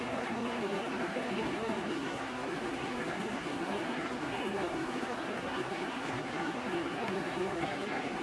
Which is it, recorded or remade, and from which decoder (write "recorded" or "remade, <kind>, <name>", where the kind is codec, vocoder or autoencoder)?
remade, codec, SNAC